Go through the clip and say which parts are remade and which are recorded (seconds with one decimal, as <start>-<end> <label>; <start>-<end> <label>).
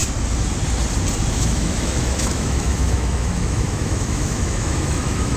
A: 0.0-1.3 recorded; 1.3-5.4 remade